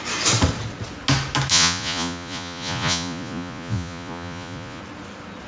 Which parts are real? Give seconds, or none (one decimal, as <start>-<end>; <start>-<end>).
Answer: 0.0-1.5; 4.8-5.5